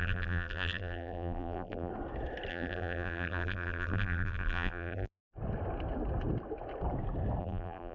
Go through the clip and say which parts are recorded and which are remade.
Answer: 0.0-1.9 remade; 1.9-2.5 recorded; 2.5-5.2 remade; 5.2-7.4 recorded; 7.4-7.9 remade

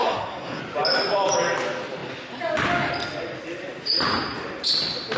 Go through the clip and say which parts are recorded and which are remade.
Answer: 0.0-0.6 remade; 0.6-5.2 recorded